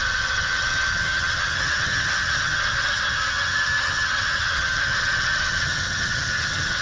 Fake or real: fake